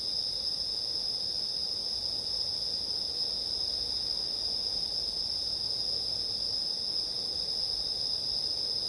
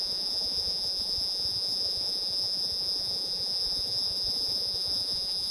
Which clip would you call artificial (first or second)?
second